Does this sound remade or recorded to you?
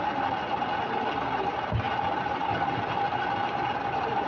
recorded